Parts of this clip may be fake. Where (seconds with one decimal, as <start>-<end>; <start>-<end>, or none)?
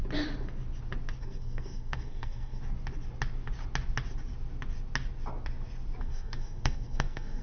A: 1.2-2.6; 6.0-7.4